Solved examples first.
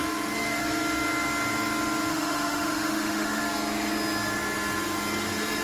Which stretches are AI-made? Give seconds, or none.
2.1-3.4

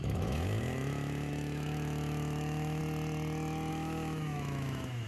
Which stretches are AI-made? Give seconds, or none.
0.0-2.8; 3.7-5.1